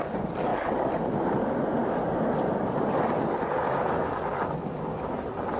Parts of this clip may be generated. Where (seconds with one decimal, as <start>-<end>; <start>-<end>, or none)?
none